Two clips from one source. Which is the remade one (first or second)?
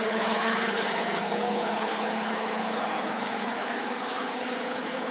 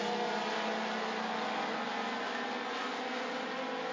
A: first